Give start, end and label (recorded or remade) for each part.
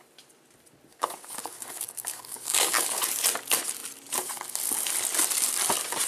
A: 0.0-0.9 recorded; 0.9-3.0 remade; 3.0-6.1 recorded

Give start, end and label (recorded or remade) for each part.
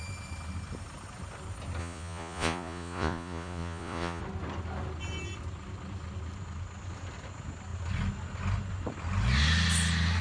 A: 0.0-1.8 recorded; 1.8-4.2 remade; 4.2-10.2 recorded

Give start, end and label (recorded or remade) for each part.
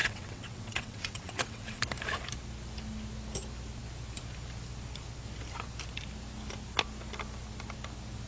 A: 0.0-1.8 remade; 1.8-8.3 recorded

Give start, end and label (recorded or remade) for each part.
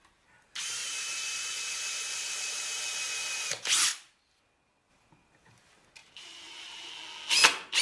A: 0.0-0.8 recorded; 0.8-2.6 remade; 2.6-6.0 recorded; 6.0-6.9 remade; 6.9-7.8 recorded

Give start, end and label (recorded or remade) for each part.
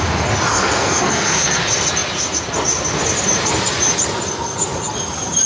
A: 0.0-0.5 recorded; 0.5-1.6 remade; 1.6-5.5 recorded